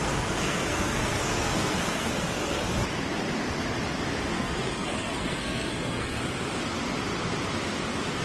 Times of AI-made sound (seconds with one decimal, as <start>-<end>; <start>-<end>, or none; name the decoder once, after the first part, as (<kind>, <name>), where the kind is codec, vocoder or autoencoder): 0.0-2.6 (codec, SNAC); 4.3-6.2